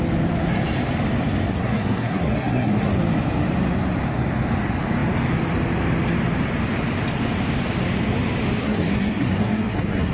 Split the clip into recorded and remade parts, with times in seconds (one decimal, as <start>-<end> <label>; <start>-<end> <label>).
0.0-1.5 recorded; 1.5-2.9 remade; 2.9-8.6 recorded; 8.6-10.1 remade